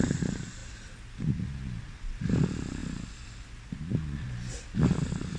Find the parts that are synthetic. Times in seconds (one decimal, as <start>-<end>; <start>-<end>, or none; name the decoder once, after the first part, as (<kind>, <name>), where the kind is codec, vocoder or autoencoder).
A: none